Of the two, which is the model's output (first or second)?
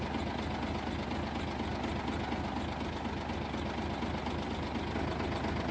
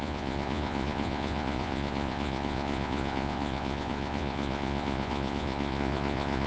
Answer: second